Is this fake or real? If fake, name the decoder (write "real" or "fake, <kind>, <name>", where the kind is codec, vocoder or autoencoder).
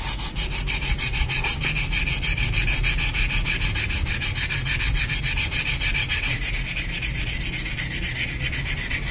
real